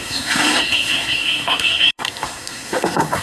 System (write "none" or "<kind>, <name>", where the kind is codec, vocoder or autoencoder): codec, SNAC